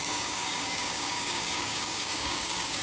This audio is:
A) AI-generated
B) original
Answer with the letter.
A